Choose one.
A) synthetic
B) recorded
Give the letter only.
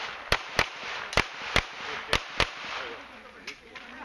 B